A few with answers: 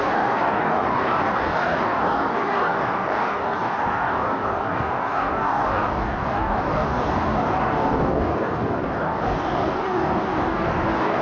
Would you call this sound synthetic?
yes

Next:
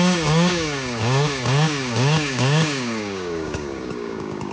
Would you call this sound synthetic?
yes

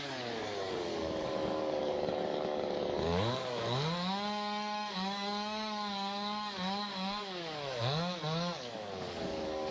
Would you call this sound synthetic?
yes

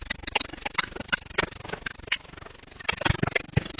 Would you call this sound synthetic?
no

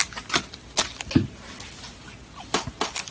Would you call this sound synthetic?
no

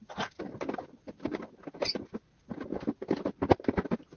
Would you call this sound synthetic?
no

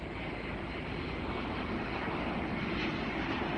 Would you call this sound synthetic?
no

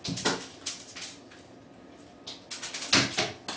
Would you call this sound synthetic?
no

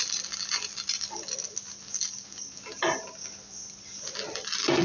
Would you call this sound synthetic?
no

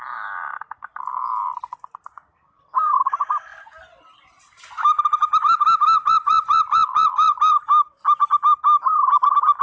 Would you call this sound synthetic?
no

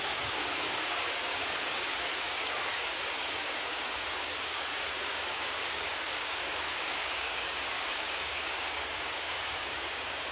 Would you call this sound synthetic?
yes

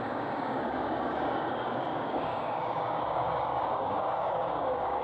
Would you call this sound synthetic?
yes